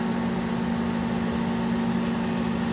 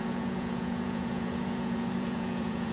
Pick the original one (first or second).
first